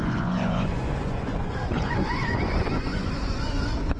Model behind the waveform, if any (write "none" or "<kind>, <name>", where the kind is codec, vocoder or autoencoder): vocoder, Vocos